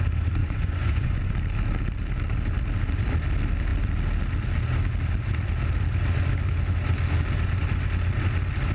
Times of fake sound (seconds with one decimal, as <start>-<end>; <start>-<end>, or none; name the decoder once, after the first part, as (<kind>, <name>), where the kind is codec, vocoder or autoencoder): 0.4-1.3 (vocoder, Vocos)